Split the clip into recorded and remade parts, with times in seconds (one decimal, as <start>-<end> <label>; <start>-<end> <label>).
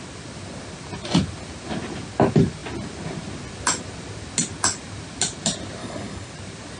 0.0-5.8 recorded; 5.8-6.3 remade; 6.3-6.8 recorded